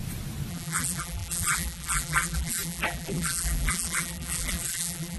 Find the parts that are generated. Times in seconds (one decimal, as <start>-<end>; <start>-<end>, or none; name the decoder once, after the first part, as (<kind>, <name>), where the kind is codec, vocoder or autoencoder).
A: 0.5-5.2 (vocoder, BigVGAN v2)